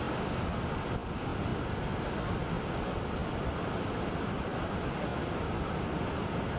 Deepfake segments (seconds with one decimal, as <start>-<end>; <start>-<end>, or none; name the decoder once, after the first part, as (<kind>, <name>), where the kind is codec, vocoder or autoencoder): none

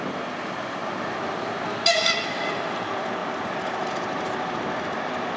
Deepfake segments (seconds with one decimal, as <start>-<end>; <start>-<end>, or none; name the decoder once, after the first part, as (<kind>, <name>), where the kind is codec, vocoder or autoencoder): 3.2-5.4 (vocoder, BigVGAN v2)

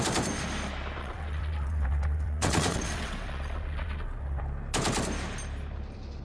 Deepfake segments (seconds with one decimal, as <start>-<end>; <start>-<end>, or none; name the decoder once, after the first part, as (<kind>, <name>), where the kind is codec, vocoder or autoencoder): 1.0-4.4 (vocoder, WaveNeXt)

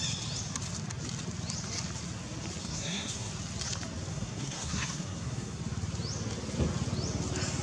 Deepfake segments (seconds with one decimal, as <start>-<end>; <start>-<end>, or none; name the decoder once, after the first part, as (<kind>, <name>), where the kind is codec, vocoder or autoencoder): 2.6-3.3 (codec, SNAC); 4.1-5.6